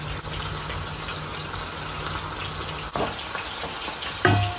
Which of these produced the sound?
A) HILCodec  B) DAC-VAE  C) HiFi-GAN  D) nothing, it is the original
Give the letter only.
D